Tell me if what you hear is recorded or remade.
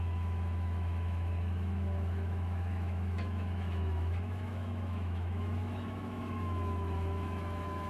remade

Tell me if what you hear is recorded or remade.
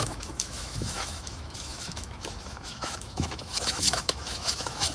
remade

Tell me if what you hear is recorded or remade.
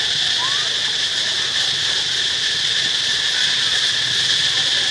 recorded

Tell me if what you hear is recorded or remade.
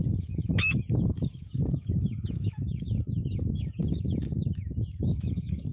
remade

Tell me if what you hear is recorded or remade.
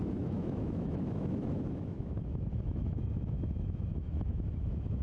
remade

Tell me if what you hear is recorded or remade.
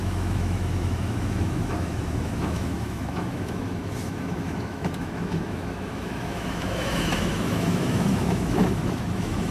remade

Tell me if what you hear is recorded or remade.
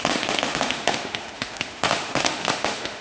remade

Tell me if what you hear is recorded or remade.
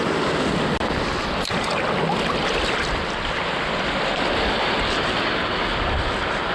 recorded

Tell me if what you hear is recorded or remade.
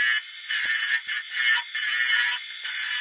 recorded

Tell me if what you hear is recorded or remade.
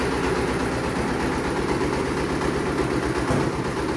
recorded